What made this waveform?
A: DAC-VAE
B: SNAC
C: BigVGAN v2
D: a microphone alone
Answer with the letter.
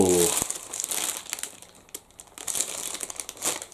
D